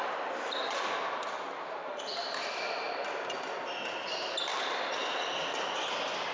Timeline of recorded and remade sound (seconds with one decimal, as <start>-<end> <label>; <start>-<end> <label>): 0.0-6.3 recorded